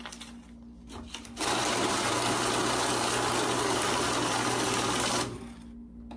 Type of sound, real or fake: real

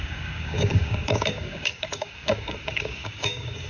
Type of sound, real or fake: fake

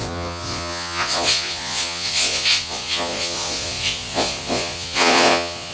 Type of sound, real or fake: fake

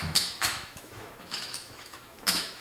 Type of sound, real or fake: fake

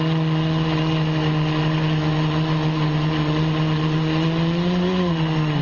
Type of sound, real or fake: real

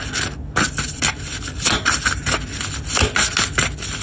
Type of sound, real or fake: real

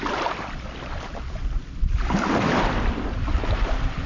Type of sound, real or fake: fake